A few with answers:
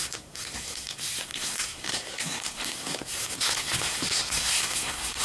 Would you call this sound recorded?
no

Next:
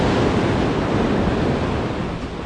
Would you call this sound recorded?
yes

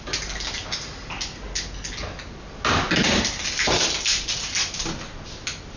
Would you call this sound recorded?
yes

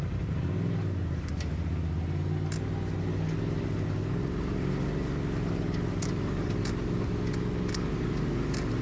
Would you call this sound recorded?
yes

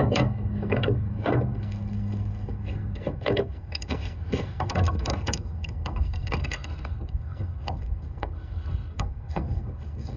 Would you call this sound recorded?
no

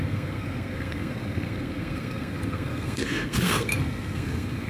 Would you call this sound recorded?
no